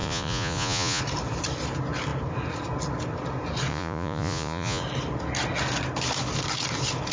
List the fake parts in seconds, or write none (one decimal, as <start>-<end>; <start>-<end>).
0.0-1.0; 3.7-4.8